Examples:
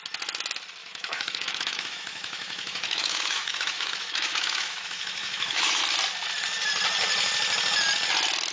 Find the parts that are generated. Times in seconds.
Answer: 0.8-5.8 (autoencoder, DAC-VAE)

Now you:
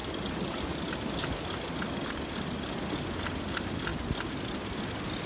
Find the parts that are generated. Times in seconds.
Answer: none

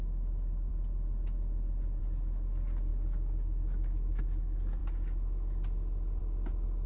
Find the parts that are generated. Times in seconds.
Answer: none

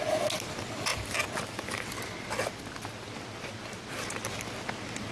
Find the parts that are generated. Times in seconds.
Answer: none

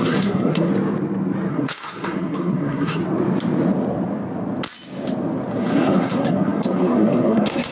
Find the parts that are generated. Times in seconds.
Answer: 0.0-0.7 (codec, SNAC); 1.5-3.0; 5.5-7.7

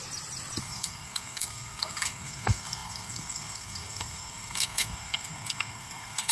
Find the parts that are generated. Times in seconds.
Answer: 0.6-6.3 (codec, SNAC)